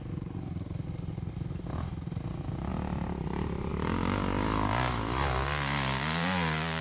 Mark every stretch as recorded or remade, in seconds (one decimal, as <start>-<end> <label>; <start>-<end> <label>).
0.0-6.8 recorded